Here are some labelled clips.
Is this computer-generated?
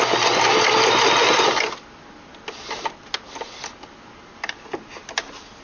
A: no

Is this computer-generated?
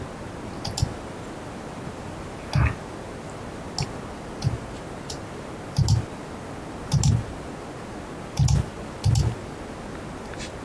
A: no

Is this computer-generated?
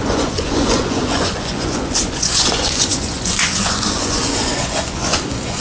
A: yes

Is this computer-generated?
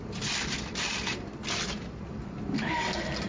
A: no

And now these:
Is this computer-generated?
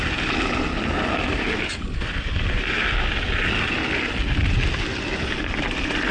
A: no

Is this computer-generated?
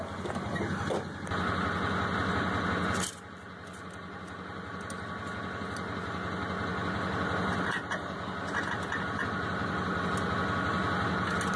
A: no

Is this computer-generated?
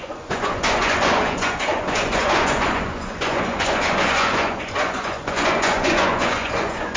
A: yes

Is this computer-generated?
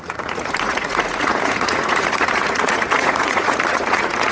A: yes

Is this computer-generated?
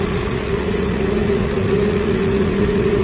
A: yes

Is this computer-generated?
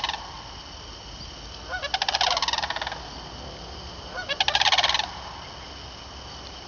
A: no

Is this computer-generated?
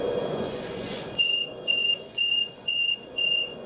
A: yes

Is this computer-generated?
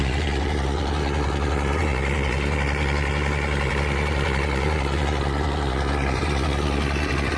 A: yes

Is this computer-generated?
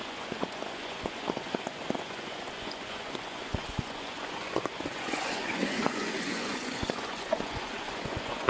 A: yes